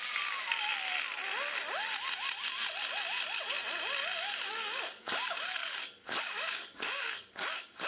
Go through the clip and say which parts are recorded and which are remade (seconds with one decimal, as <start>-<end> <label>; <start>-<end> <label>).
0.0-0.7 remade; 0.7-4.5 recorded; 4.5-7.9 remade